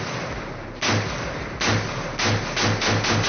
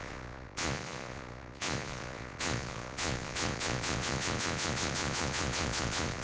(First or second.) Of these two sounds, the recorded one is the first